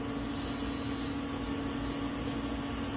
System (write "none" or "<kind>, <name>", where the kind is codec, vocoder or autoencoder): none